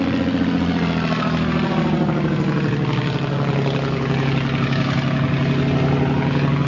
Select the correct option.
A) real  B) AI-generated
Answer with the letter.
A